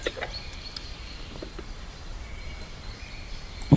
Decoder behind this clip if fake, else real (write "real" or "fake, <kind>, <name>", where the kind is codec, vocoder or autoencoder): fake, vocoder, BigVGAN v2